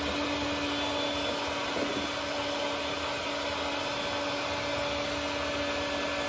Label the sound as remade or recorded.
recorded